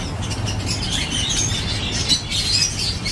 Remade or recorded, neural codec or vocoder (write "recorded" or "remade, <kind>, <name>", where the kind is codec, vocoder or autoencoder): recorded